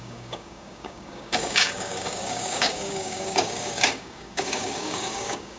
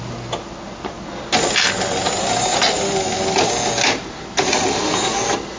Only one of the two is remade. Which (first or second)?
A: first